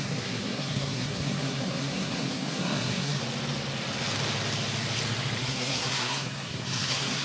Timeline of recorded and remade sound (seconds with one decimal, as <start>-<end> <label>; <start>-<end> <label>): 0.0-3.2 remade; 3.2-5.4 recorded; 5.4-7.2 remade